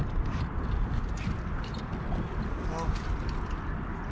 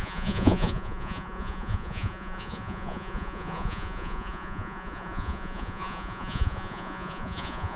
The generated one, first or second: second